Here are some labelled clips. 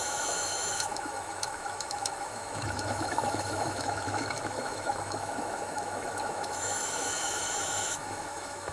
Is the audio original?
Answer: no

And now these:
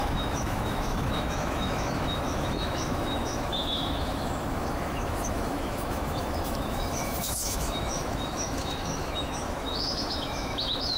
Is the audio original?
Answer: no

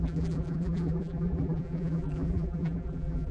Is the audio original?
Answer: no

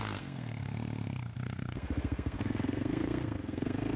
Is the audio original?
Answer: no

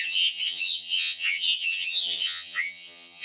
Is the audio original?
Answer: no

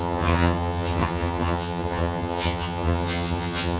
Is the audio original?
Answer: no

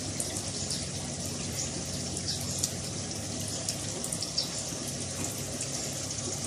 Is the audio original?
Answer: yes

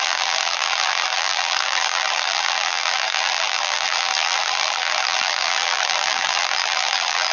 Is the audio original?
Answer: no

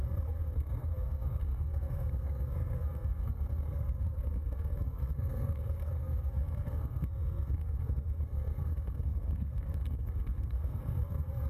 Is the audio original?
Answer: no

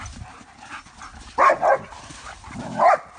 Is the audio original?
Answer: yes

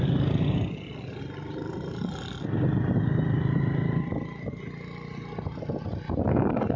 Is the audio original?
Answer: yes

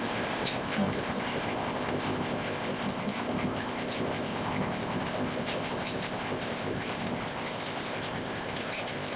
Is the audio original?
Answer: no